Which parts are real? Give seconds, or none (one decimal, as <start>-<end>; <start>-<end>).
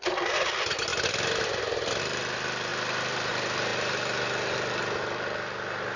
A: 0.0-6.0